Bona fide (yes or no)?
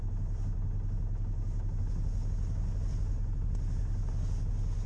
yes